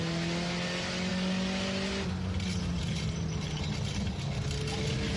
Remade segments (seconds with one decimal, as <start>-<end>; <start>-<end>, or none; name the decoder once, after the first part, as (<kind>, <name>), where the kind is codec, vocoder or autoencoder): none